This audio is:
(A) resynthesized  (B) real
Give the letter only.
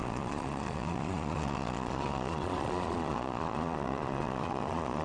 A